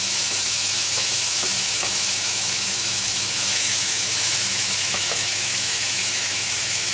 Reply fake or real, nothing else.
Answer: fake